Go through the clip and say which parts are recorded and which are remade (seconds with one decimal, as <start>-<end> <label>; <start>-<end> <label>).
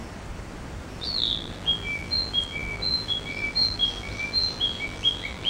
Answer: 0.0-1.0 recorded; 1.0-5.5 remade